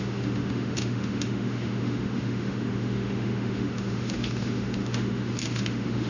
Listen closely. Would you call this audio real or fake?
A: fake